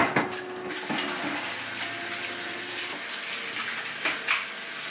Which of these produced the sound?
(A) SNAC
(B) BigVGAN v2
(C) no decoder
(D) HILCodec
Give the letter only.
C